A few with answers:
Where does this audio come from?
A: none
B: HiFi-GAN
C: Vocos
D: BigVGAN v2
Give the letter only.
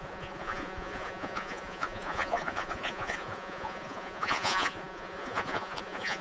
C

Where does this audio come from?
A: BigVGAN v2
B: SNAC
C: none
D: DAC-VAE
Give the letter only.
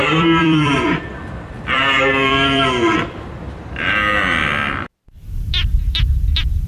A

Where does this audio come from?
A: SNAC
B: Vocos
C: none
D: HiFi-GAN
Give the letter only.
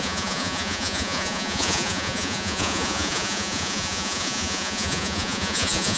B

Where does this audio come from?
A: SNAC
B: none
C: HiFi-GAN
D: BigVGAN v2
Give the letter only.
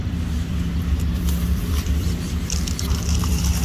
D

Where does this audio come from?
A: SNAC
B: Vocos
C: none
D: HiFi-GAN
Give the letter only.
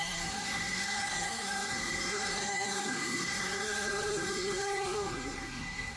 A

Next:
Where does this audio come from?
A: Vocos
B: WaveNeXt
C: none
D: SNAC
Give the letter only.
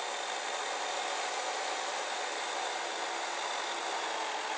C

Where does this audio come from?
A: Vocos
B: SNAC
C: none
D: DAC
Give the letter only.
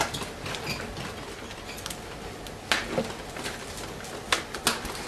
C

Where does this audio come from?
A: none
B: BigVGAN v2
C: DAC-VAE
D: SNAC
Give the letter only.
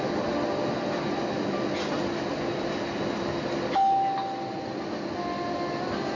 A